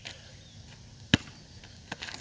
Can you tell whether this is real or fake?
real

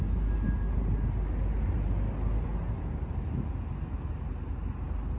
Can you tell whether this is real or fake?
real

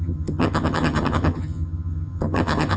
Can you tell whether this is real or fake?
fake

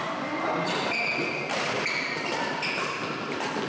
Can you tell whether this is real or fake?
real